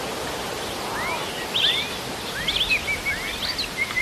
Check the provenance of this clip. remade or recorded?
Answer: recorded